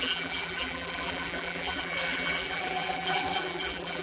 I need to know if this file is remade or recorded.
remade